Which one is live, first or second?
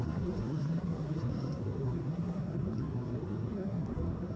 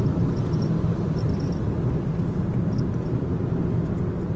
second